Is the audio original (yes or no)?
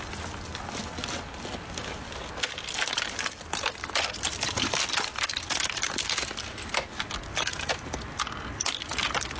yes